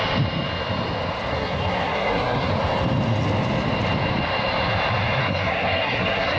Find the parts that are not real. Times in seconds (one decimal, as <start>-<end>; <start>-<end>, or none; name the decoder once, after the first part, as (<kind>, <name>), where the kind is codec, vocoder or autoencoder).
1.3-2.5 (codec, SNAC); 5.2-6.4